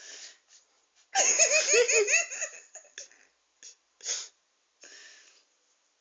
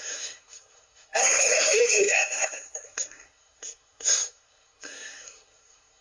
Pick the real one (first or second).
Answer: first